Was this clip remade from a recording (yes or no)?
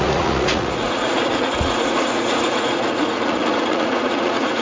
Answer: yes